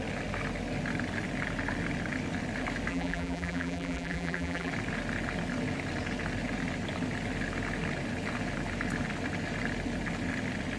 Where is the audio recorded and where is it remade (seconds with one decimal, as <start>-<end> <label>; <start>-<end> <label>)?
0.0-2.9 recorded; 2.9-4.7 remade; 4.7-10.8 recorded